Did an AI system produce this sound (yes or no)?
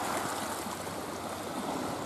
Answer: no